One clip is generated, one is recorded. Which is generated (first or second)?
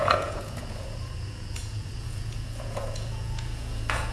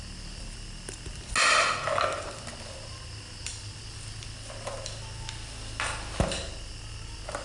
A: first